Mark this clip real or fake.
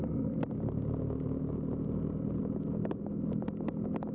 real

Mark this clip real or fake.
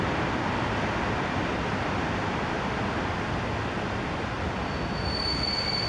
real